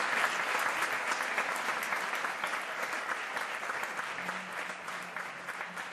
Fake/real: real